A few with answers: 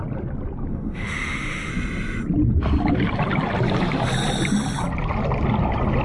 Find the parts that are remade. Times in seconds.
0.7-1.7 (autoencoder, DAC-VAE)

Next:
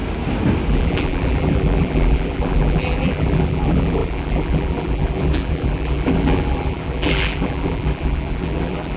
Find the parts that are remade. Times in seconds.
0.7-9.0 (vocoder, BigVGAN v2)